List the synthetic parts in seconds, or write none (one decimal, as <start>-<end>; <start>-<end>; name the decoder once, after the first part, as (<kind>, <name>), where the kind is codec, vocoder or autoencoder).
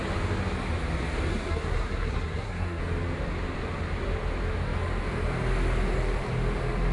1.3-2.8 (codec, SNAC)